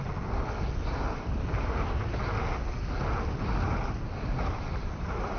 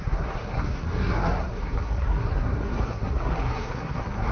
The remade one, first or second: second